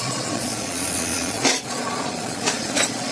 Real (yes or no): no